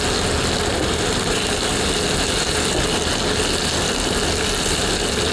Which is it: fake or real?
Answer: real